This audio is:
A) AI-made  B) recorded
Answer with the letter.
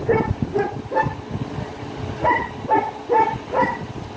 B